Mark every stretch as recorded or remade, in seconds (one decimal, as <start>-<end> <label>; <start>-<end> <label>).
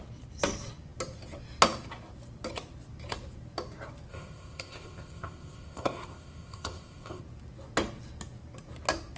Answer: 0.0-4.1 recorded; 4.1-7.2 remade; 7.2-9.2 recorded